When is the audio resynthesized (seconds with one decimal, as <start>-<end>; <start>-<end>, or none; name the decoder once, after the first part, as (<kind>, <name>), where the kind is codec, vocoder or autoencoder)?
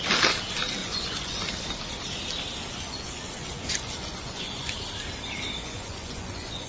0.8-1.4 (vocoder, Vocos); 2.6-4.7; 5.6-6.7